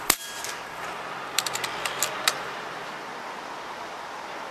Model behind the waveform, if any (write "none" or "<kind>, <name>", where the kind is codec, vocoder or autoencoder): none